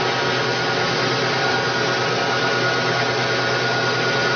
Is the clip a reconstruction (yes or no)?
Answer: no